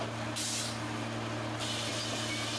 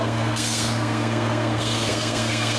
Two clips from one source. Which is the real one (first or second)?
first